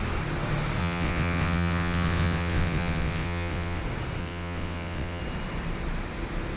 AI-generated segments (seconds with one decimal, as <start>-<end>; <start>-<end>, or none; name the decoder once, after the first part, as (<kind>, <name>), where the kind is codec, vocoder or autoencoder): 0.8-3.8 (vocoder, WaveNeXt); 4.2-5.2